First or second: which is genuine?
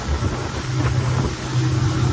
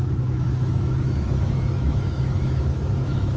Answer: first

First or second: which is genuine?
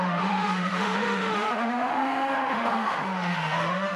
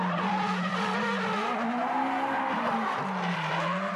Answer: second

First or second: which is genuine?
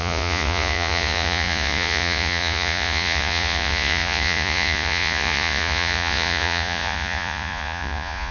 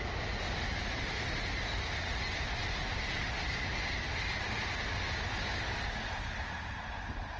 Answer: second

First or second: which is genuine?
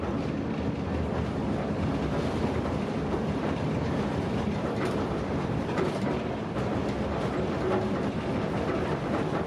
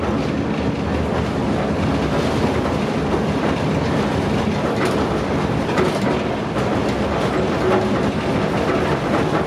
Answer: second